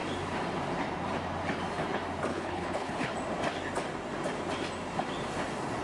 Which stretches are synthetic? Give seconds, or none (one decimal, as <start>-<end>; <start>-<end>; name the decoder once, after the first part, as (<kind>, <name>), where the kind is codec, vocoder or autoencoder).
2.3-3.1 (codec, HILCodec)